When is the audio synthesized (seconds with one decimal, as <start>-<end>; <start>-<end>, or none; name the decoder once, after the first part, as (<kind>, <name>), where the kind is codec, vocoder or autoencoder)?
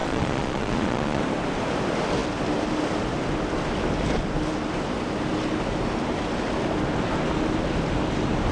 0.0-1.2 (vocoder, Vocos)